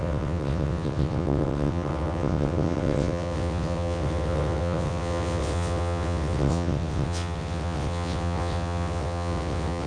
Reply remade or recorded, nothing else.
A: remade